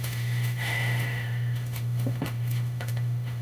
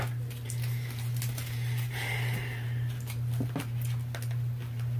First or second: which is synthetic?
first